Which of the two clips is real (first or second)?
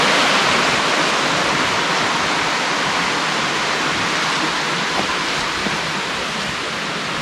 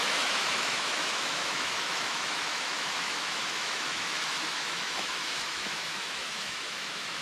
first